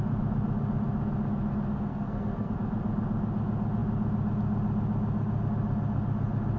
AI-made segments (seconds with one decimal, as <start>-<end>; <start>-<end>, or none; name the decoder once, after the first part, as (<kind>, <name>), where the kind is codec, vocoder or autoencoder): 1.9-2.5 (codec, SNAC)